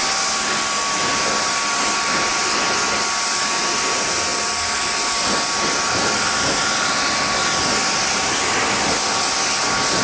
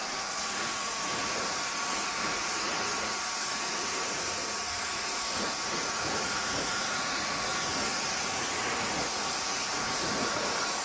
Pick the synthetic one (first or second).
second